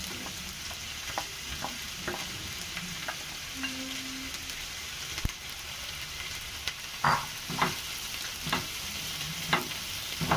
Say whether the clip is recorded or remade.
recorded